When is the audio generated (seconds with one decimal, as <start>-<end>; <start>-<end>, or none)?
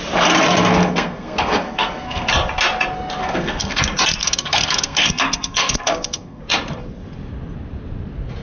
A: 0.8-2.3; 3.2-3.8; 4.2-6.4